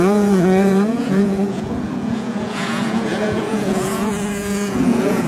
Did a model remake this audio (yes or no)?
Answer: yes